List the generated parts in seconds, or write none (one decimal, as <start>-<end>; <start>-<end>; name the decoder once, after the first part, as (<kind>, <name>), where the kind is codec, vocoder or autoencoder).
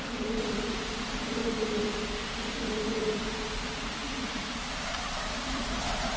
0.0-1.4 (vocoder, BigVGAN v2); 3.0-6.2